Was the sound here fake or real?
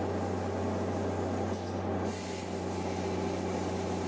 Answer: real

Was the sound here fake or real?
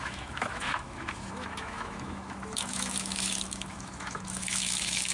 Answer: fake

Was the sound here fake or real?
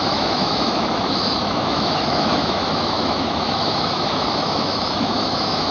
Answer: fake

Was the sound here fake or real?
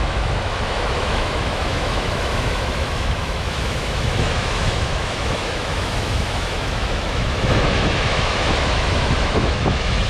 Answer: fake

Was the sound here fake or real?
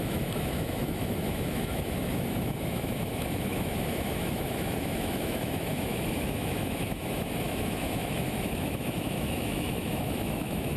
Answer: fake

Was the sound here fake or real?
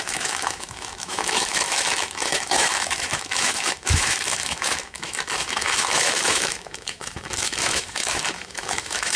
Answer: fake